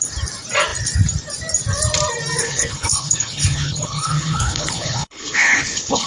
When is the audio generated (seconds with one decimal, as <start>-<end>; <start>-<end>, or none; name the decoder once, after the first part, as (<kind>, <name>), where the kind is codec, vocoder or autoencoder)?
2.4-6.1 (codec, HILCodec)